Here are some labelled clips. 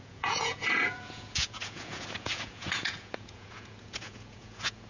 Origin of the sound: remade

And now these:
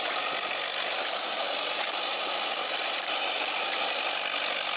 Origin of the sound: recorded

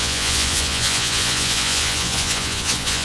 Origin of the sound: remade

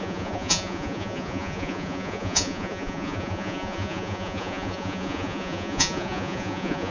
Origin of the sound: remade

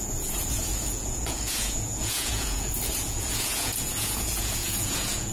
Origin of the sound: remade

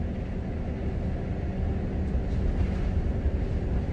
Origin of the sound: recorded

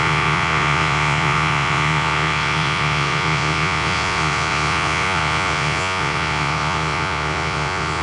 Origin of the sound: remade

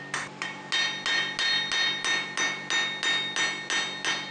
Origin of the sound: recorded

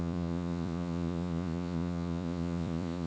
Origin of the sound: remade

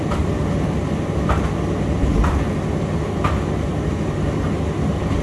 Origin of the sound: recorded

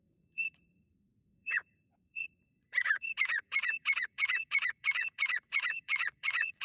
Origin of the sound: remade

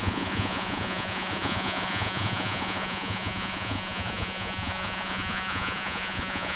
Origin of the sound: remade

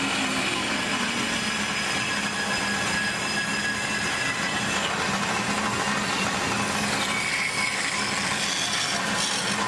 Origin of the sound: recorded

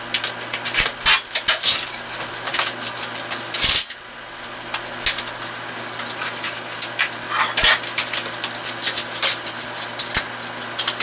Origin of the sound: recorded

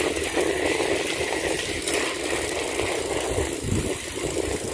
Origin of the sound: recorded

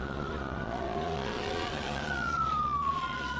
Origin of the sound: remade